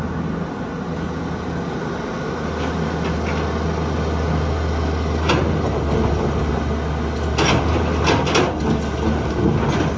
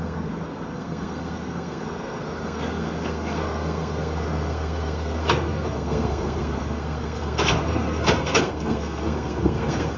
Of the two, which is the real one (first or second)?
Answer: first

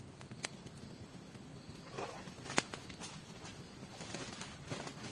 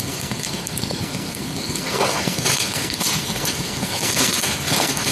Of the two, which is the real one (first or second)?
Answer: first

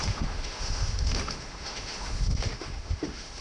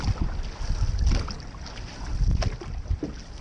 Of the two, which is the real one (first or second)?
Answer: second